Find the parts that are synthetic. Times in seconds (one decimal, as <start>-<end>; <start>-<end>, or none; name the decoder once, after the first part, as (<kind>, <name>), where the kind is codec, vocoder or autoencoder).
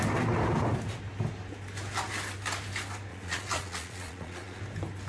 3.1-4.6 (vocoder, Vocos)